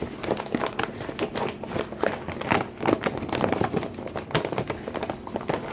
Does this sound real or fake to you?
real